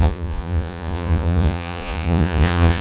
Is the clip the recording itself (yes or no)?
no